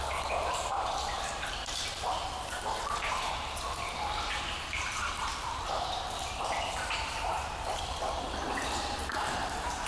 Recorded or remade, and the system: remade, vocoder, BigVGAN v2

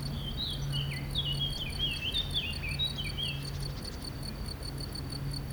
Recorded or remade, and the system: recorded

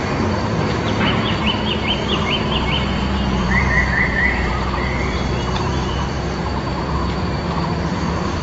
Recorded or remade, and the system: remade, vocoder, BigVGAN v2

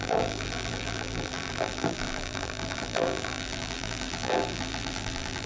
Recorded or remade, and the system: remade, vocoder, BigVGAN v2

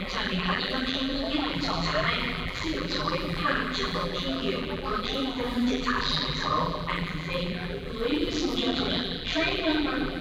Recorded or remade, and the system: remade, vocoder, BigVGAN v2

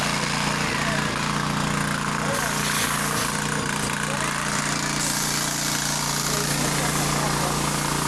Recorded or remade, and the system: recorded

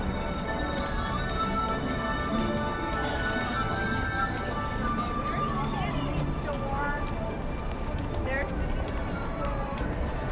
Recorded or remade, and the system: remade, vocoder, BigVGAN v2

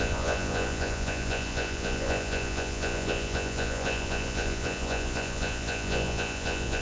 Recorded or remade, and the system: remade, vocoder, Vocos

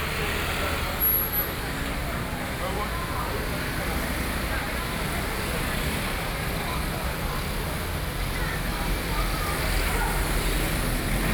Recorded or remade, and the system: recorded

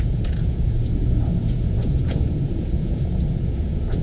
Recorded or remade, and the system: remade, vocoder, Vocos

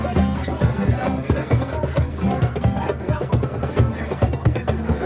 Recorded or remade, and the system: remade, codec, SNAC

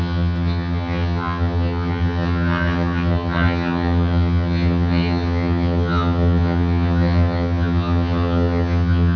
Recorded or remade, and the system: remade, vocoder, HiFi-GAN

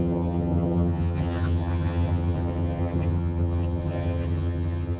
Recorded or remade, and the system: remade, vocoder, HiFi-GAN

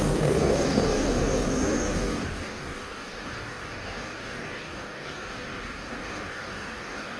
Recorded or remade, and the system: remade, codec, DAC